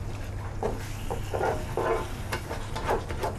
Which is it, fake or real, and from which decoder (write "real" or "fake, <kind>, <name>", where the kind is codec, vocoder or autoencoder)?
real